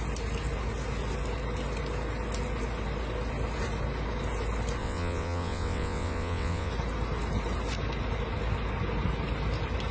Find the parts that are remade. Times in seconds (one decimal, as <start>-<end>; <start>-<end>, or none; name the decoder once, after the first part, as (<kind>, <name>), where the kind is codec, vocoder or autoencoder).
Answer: 4.8-6.7 (vocoder, WaveNeXt)